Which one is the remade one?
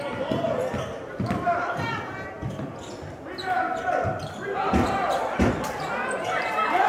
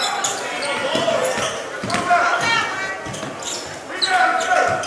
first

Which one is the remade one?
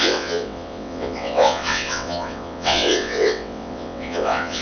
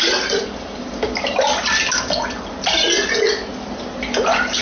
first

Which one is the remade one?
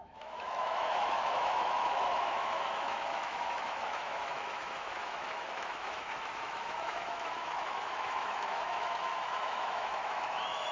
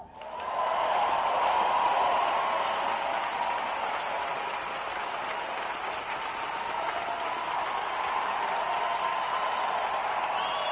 first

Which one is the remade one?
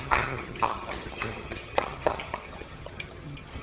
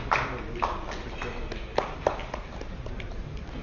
first